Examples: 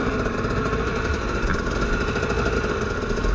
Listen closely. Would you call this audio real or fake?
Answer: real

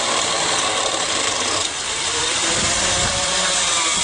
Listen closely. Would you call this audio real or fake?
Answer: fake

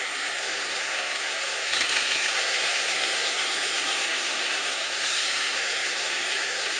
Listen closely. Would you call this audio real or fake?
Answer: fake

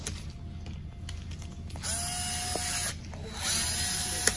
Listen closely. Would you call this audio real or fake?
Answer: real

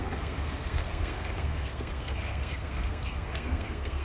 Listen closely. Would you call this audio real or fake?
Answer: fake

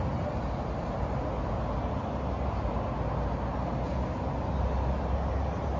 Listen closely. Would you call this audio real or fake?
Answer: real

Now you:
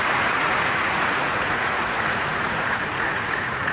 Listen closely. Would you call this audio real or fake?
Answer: fake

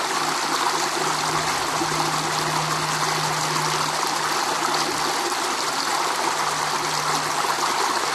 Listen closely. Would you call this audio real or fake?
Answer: real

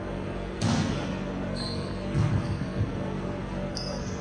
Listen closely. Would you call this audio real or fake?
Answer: fake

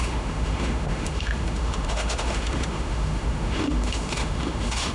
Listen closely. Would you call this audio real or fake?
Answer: fake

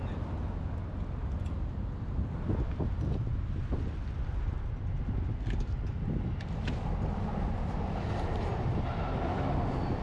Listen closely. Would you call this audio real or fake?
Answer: real